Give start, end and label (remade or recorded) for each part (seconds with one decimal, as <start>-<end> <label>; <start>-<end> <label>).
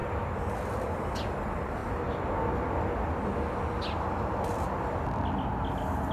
0.0-6.1 recorded